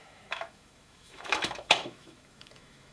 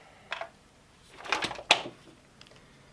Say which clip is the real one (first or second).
second